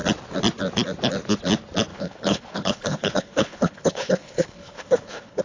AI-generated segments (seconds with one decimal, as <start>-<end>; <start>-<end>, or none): 1.9-5.4